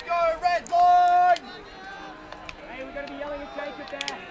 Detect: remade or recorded recorded